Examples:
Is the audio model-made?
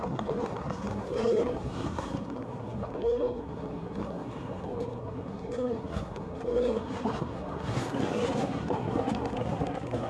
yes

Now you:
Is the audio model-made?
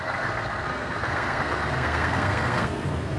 yes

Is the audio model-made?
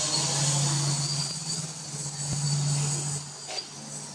no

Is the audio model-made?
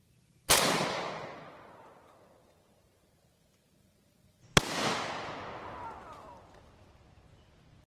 no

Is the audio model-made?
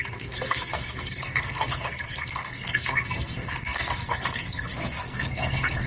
yes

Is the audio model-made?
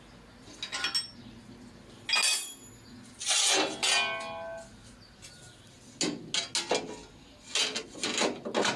no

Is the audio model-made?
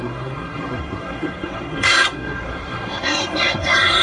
yes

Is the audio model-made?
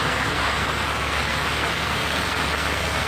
yes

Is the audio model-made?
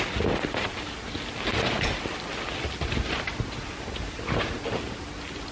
no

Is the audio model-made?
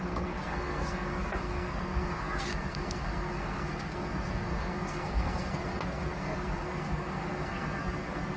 yes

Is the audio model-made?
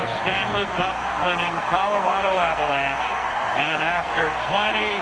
yes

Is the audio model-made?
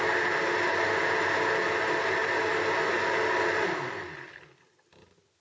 no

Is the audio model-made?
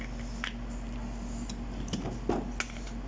no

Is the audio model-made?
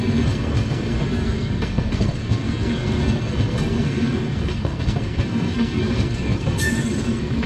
yes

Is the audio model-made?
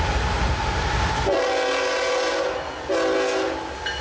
no